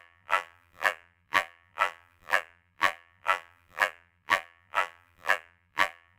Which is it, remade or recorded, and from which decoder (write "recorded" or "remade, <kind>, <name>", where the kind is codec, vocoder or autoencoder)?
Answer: remade, vocoder, BigVGAN v2